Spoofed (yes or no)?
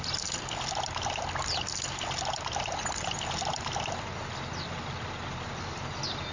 no